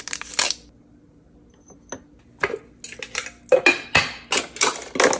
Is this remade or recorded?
recorded